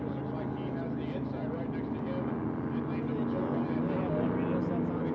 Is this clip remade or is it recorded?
recorded